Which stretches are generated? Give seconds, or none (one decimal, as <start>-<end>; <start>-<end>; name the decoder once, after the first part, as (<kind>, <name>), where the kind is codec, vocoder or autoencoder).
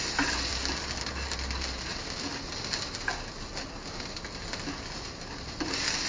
none